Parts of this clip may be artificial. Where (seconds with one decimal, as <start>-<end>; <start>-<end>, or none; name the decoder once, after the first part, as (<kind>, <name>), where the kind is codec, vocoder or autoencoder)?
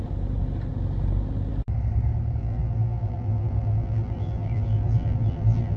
2.4-5.8 (vocoder, BigVGAN v2)